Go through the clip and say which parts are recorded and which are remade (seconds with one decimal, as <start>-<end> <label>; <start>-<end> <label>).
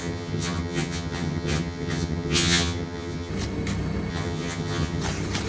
0.0-3.3 remade; 3.3-4.1 recorded; 4.1-5.0 remade; 5.0-5.5 recorded